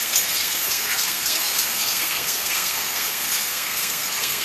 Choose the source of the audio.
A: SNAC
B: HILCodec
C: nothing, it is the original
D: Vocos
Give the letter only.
A